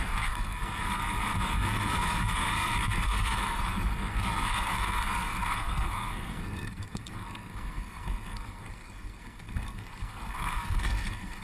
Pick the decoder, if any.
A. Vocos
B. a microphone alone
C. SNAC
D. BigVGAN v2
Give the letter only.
C